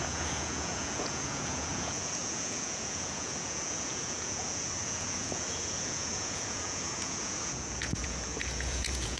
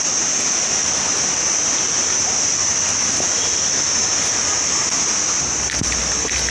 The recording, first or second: second